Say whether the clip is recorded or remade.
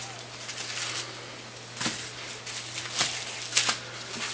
recorded